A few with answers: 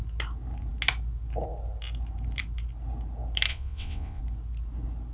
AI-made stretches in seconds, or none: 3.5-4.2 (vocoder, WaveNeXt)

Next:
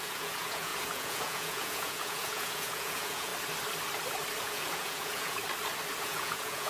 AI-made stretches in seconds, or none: 0.0-3.3 (vocoder, Vocos); 4.4-5.4; 6.0-6.7

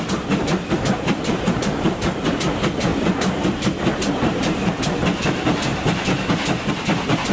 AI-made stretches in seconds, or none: none

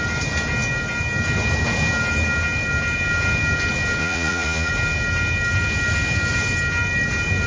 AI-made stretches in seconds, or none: 4.0-4.7 (vocoder, Vocos)

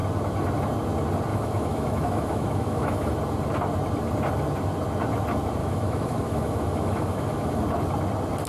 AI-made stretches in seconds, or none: 1.3-3.1 (autoencoder, DAC-VAE); 5.6-7.6

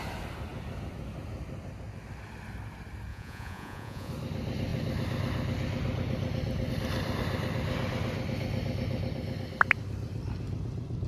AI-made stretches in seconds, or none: 3.1-4.1 (vocoder, Vocos)